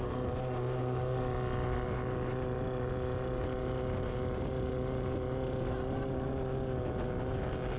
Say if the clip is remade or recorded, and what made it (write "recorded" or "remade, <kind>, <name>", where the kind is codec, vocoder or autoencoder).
recorded